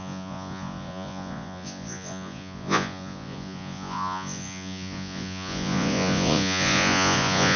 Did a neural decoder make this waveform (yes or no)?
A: yes